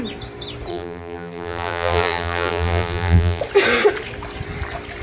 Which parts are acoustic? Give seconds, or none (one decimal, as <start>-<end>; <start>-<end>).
0.0-0.7; 3.4-5.0